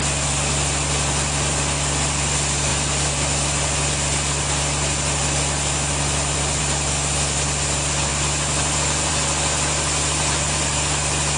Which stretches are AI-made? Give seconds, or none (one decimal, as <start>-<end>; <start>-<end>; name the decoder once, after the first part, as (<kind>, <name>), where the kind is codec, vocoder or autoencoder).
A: none